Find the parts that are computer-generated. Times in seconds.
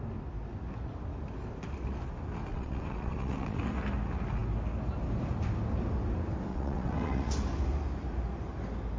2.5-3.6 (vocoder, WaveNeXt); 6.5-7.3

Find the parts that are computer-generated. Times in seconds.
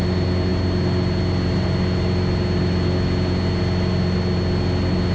none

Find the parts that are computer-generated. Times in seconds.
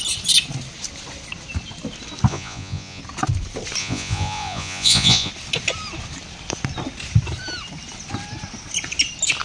2.3-3.0 (vocoder, Vocos); 3.8-5.3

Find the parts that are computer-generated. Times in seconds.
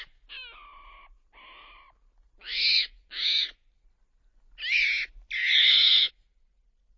5.4-6.1 (autoencoder, DAC-VAE)